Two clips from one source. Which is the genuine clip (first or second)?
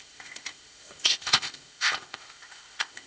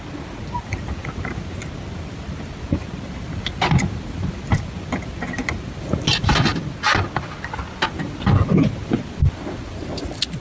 second